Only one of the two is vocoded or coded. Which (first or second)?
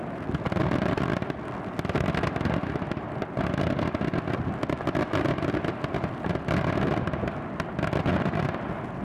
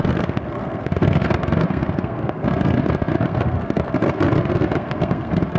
second